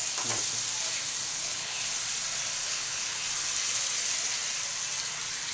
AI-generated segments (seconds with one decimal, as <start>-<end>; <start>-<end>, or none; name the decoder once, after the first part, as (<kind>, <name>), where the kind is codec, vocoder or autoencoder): 1.3-1.8 (codec, HILCodec); 2.6-3.2